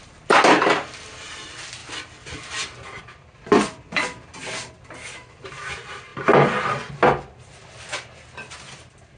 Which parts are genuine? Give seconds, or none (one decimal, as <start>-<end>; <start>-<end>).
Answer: 0.0-9.2